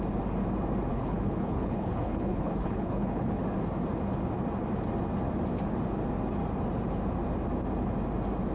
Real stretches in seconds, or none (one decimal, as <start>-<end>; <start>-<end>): 0.0-0.9; 3.4-8.5